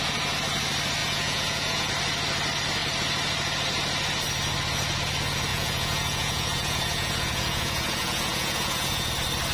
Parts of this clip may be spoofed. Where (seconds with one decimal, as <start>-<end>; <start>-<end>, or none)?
1.0-1.9; 5.5-9.1